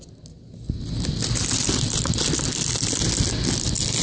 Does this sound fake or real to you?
real